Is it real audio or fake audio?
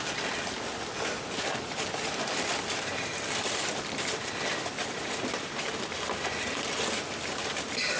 real